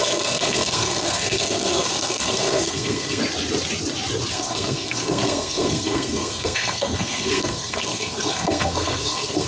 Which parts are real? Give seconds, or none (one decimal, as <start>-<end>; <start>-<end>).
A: 3.2-4.3